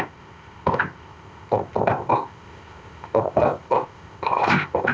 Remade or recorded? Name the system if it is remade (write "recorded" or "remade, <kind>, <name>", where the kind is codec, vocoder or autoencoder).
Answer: remade, codec, ZipCodec